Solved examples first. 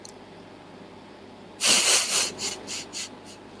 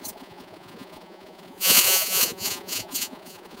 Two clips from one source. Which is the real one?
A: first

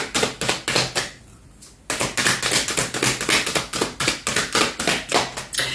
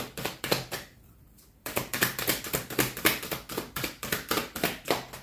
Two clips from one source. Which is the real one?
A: first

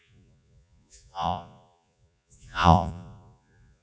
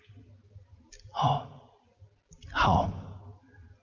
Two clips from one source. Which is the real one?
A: second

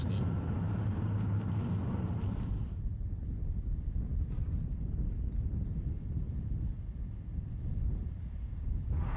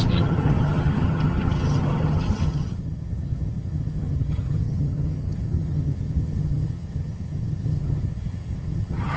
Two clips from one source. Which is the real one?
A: first